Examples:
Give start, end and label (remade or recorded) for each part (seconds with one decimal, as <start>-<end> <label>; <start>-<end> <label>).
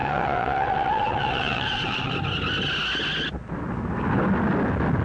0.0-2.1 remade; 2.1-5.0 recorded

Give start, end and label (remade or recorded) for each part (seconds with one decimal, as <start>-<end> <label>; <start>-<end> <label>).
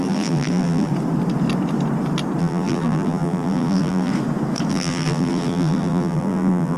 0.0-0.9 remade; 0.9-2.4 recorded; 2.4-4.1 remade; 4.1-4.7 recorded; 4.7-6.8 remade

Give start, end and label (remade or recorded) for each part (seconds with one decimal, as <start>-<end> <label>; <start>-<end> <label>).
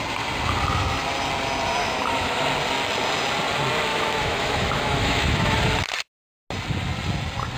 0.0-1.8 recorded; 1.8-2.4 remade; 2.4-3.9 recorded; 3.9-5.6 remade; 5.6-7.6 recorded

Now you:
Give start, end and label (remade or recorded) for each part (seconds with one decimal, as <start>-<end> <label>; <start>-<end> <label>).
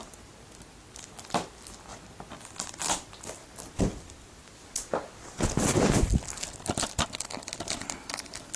0.0-8.6 recorded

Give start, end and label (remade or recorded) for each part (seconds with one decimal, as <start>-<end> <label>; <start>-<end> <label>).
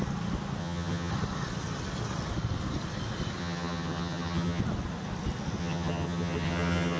0.0-0.6 recorded; 0.6-1.1 remade; 1.1-3.4 recorded; 3.4-4.6 remade; 4.6-5.6 recorded; 5.6-7.0 remade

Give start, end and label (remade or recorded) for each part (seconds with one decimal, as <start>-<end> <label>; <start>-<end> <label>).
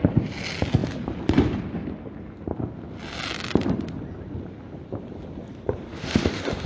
0.0-5.9 recorded; 5.9-6.7 remade